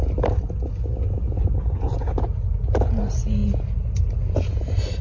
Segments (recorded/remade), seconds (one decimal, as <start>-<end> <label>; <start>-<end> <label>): 0.0-5.0 recorded